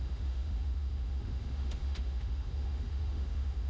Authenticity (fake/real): fake